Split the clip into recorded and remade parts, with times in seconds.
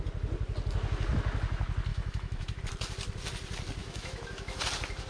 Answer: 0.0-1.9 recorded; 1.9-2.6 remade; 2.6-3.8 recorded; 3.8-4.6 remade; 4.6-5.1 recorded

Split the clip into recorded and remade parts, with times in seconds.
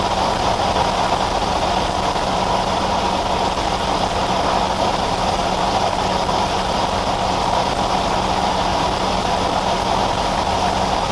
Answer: 0.0-11.1 recorded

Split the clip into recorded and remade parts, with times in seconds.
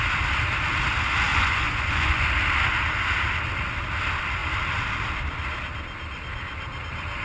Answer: 0.0-1.3 recorded; 1.3-2.3 remade; 2.3-7.2 recorded